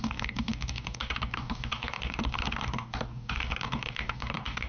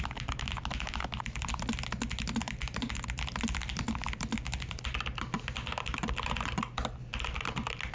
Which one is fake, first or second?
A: first